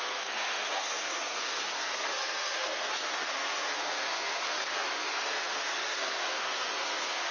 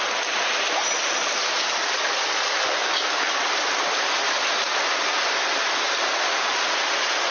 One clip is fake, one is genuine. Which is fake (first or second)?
first